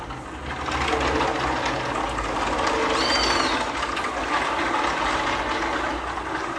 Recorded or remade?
recorded